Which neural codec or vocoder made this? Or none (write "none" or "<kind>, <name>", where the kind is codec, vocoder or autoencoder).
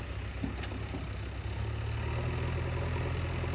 none